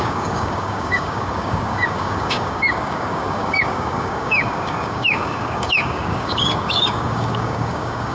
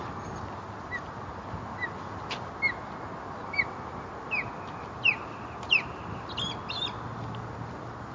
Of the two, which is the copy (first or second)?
first